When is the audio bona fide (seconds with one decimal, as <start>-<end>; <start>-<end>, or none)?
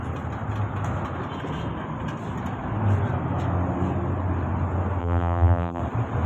0.0-5.0; 5.8-6.3